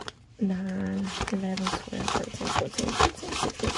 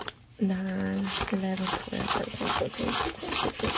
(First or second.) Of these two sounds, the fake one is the first